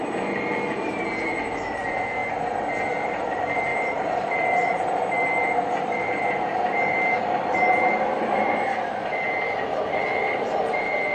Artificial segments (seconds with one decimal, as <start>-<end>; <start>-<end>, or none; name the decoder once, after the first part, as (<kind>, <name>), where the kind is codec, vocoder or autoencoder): 0.0-2.2 (vocoder, BigVGAN v2); 2.9-11.1